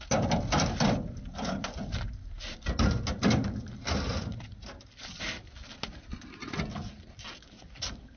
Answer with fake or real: real